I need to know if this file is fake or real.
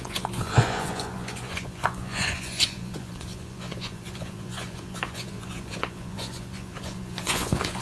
fake